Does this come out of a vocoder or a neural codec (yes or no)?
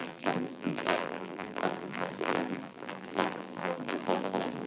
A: yes